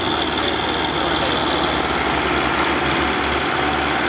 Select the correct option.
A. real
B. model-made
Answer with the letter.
A